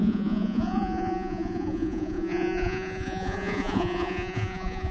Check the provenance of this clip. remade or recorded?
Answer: remade